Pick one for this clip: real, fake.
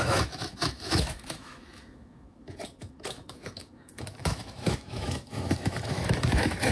fake